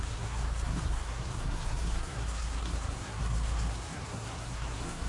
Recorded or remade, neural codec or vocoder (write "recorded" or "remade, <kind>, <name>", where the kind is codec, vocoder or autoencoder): remade, codec, SNAC